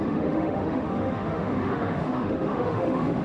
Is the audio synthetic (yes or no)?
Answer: yes